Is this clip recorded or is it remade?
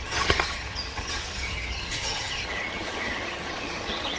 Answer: remade